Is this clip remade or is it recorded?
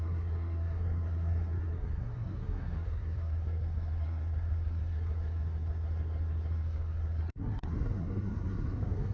remade